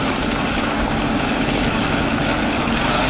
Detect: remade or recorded recorded